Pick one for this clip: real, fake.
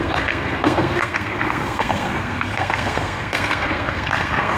fake